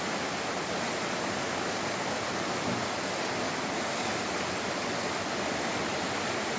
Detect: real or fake real